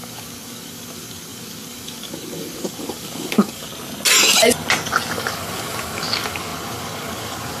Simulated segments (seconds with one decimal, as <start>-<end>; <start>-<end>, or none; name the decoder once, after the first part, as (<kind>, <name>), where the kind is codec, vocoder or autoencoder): 0.0-3.7 (codec, DAC); 4.9-7.6